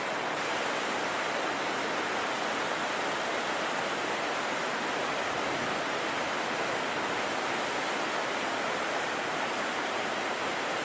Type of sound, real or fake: real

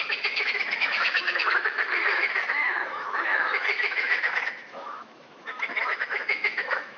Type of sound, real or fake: fake